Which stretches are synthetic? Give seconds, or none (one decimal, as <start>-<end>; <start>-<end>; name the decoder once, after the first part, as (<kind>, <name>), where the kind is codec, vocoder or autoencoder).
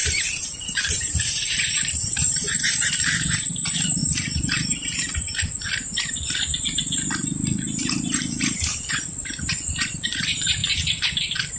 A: 0.0-10.6 (vocoder, BigVGAN v2)